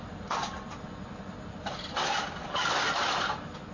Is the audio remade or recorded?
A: recorded